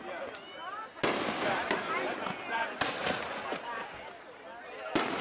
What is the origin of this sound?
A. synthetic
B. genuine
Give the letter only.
B